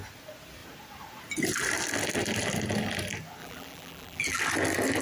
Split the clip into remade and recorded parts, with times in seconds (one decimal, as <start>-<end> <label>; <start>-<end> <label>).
0.0-3.4 recorded; 3.4-4.4 remade; 4.4-5.0 recorded